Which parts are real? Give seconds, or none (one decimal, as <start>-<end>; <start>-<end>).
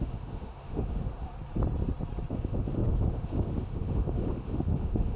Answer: 1.3-2.3